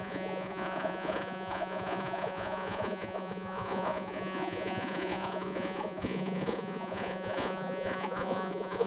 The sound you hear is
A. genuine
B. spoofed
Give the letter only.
B